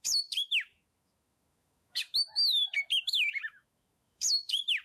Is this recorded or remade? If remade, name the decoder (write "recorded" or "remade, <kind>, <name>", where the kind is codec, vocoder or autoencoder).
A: remade, autoencoder, DAC-VAE